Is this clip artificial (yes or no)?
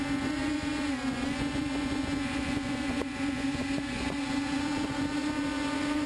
yes